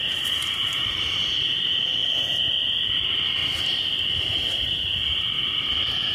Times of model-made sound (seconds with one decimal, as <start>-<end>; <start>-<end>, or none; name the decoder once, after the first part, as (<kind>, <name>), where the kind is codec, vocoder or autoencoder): 0.0-2.0 (vocoder, BigVGAN v2); 2.9-3.4; 4.2-6.1